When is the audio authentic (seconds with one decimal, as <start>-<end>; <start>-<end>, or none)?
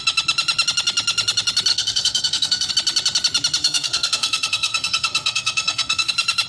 0.0-1.7; 2.7-3.6; 6.1-6.5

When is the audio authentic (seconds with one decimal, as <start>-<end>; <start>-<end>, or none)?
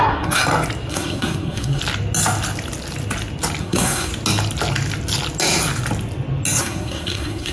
0.4-0.9; 1.8-3.6; 4.1-6.6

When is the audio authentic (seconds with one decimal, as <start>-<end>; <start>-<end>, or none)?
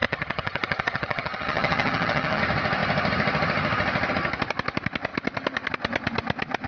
2.4-6.7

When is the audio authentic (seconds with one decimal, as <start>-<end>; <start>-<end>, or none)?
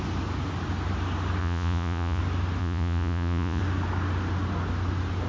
0.0-1.4; 2.2-2.6; 3.6-5.3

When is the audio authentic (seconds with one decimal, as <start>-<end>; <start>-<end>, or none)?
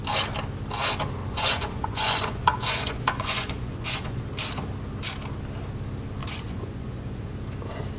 0.0-1.2; 4.2-6.2; 7.3-8.0